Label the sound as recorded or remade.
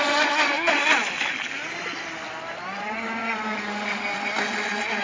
recorded